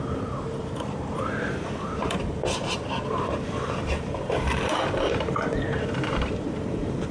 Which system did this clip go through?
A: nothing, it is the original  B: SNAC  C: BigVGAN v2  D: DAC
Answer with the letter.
C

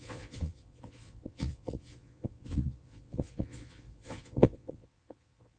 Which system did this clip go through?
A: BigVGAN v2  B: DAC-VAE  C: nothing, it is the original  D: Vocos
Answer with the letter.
D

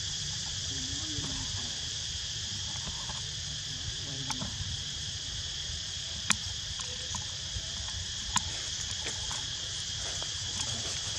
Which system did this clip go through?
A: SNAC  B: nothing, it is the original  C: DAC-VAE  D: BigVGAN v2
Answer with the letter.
D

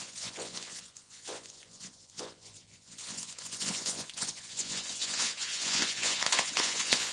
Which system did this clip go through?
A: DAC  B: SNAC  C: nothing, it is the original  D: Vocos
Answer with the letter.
D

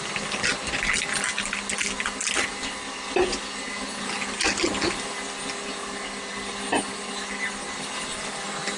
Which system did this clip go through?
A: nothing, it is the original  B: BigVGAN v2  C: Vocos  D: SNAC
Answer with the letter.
A